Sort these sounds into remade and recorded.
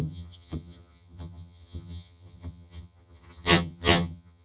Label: remade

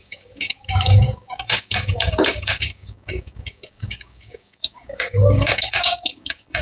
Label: remade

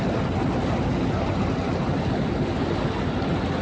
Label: recorded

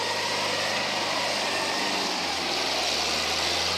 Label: recorded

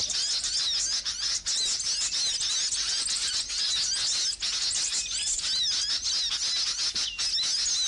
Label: recorded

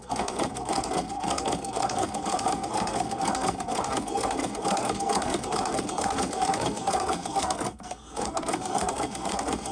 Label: remade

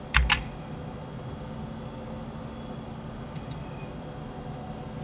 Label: recorded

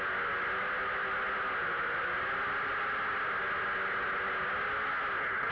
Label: recorded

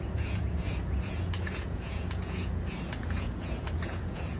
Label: remade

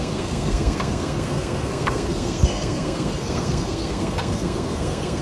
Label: remade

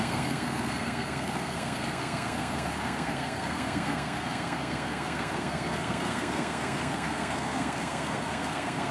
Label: remade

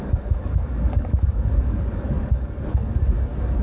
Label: remade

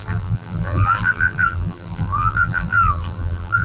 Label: remade